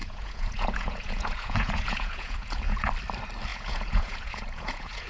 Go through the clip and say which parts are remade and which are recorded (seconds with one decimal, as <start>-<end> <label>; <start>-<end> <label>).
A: 0.0-2.9 remade; 2.9-3.5 recorded; 3.5-5.1 remade